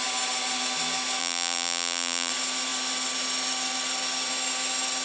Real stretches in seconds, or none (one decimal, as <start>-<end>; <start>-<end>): 0.0-1.2; 2.3-5.0